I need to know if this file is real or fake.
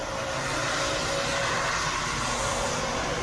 real